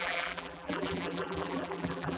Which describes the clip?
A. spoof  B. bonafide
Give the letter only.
A